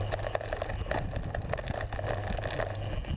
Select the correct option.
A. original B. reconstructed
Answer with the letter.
A